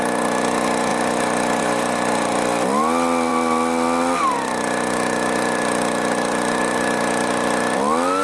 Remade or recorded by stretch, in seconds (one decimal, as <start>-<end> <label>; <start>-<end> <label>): 0.0-8.2 recorded